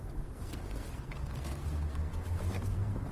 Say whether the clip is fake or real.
fake